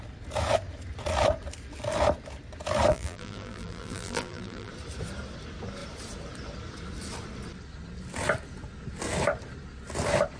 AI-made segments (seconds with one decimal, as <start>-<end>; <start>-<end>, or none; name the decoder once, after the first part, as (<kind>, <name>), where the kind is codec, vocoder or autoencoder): 2.9-4.7 (vocoder, BigVGAN v2)